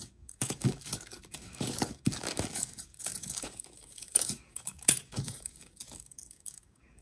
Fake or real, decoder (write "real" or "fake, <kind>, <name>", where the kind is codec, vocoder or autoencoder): fake, codec, DAC